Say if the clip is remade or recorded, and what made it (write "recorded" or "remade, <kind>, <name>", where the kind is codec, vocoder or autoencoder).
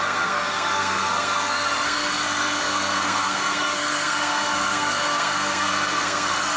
remade, codec, SNAC